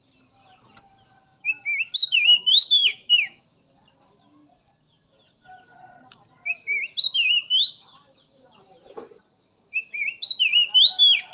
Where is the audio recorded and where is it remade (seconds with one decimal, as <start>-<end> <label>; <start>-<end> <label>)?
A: 0.0-1.3 recorded; 1.3-3.4 remade; 3.4-11.3 recorded